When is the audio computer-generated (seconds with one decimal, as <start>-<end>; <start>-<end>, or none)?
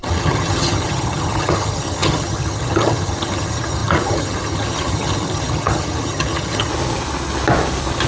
0.0-6.7